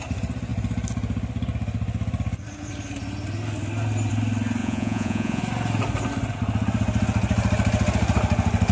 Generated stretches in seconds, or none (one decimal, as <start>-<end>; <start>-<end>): 4.6-5.4